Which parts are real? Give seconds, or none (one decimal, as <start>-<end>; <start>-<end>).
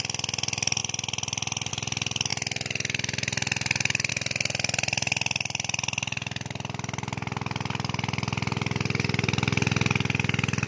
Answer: 0.0-10.7